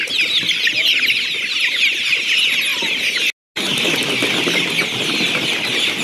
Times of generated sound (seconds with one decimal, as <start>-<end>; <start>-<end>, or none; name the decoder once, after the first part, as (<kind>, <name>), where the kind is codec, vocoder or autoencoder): none

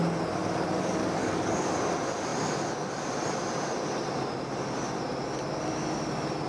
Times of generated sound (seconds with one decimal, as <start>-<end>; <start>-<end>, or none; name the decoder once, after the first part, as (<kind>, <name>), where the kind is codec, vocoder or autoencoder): 0.4-1.7 (codec, DAC)